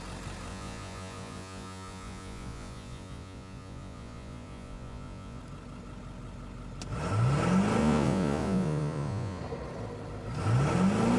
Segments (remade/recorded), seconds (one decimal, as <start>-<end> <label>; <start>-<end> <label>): 0.0-0.5 recorded; 0.5-5.4 remade; 5.4-7.8 recorded; 7.8-9.4 remade; 9.4-11.2 recorded